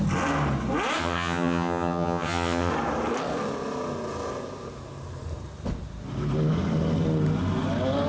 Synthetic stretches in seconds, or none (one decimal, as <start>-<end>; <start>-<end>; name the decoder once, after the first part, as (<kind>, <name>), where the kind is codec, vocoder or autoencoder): 1.0-2.7 (vocoder, HiFi-GAN)